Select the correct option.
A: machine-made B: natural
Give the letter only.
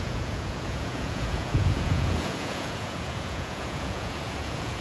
A